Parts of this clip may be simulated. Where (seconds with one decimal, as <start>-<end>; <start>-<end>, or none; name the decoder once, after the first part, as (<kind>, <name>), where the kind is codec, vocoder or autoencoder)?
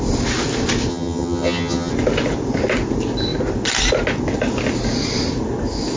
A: 0.9-1.9 (vocoder, HiFi-GAN)